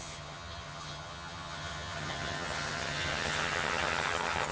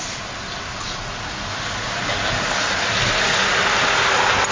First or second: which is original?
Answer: second